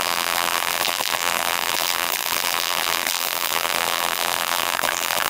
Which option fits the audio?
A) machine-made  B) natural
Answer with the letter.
A